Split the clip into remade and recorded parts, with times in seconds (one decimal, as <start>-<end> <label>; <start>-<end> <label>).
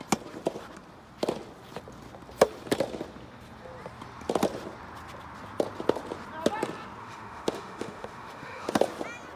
0.0-7.0 recorded; 7.0-8.7 remade; 8.7-9.4 recorded